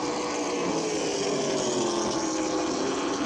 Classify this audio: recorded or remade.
recorded